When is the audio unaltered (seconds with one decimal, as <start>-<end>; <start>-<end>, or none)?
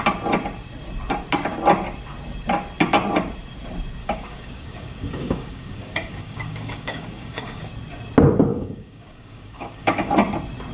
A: 0.0-4.0; 7.7-8.5; 10.1-10.7